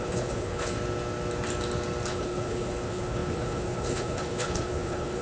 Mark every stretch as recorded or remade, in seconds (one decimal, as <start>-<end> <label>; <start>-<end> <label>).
0.0-0.7 remade; 0.7-2.1 recorded; 2.1-5.2 remade